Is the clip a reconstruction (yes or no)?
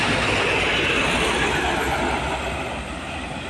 no